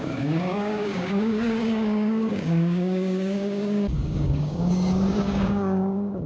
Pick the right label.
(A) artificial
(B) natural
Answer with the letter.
A